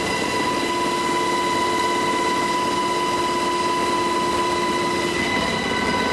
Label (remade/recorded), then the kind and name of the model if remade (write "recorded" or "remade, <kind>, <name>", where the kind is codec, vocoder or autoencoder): recorded